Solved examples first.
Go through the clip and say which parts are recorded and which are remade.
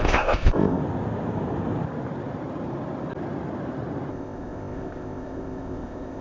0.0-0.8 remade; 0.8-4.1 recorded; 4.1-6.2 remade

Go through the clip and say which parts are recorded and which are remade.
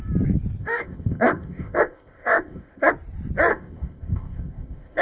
0.0-0.6 recorded; 0.6-2.9 remade; 2.9-3.5 recorded; 3.5-5.0 remade